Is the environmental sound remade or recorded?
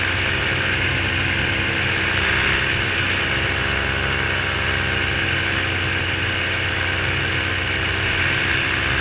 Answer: recorded